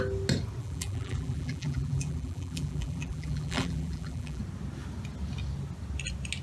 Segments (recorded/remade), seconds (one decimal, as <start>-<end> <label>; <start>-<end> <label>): 0.0-0.6 recorded; 0.6-4.4 remade; 4.4-6.4 recorded